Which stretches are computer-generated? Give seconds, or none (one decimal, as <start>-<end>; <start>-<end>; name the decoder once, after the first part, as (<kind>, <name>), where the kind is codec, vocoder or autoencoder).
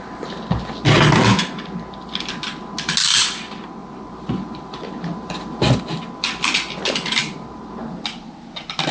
3.8-5.8 (vocoder, BigVGAN v2); 7.2-7.7